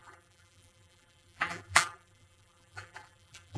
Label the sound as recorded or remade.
remade